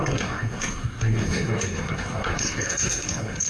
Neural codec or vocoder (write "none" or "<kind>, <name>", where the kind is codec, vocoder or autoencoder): codec, SNAC